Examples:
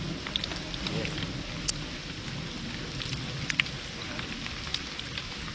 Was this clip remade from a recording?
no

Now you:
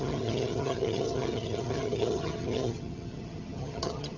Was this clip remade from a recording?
yes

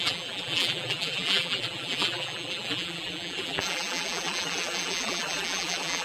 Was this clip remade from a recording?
yes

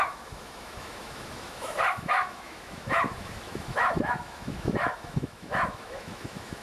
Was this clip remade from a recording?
yes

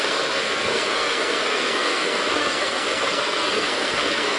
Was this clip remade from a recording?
yes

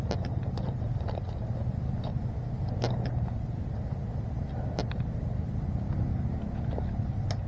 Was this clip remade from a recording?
no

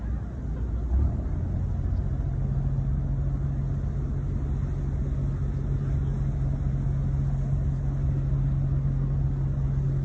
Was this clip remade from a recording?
no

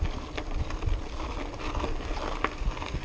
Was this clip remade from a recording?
no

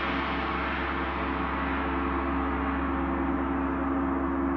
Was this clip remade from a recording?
no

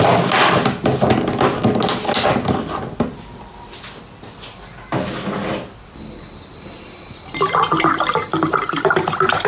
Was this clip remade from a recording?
no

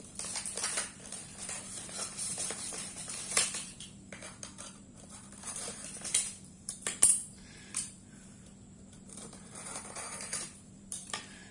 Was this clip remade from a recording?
yes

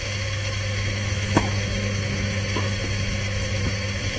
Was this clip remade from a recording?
yes